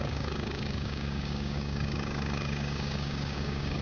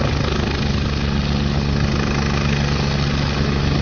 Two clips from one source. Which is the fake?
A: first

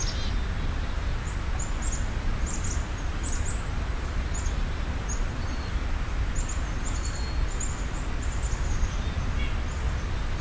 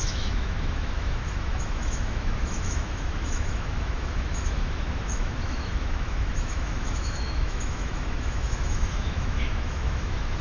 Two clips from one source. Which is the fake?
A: second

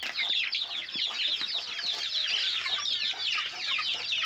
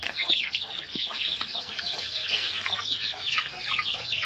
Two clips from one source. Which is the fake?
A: second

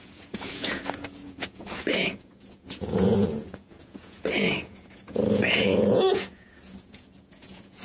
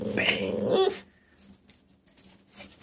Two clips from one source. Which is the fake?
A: first